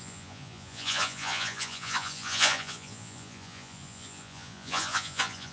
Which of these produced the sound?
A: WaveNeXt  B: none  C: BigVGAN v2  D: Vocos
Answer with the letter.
D